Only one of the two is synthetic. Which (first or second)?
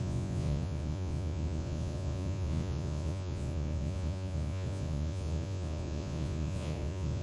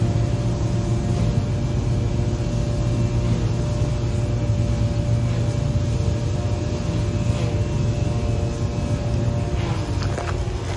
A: first